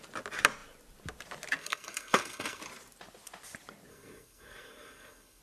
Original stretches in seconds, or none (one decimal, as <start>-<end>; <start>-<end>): 0.0-1.6; 2.6-3.9